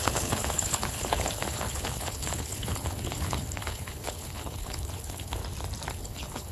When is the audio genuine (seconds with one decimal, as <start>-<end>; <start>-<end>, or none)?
5.4-5.9